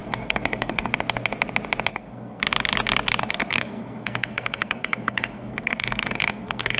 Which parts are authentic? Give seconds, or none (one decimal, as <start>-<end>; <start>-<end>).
0.9-1.9; 2.4-3.2